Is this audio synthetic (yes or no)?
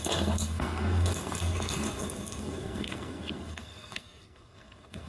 yes